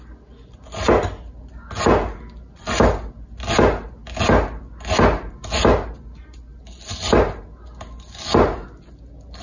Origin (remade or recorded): recorded